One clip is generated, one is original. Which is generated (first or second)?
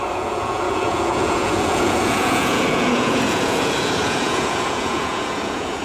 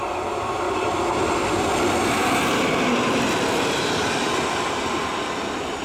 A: first